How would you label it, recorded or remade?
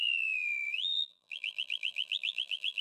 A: remade